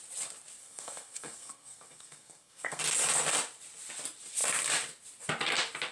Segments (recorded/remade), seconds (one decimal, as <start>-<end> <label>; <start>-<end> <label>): 0.0-0.6 recorded; 0.6-2.8 remade; 2.8-5.9 recorded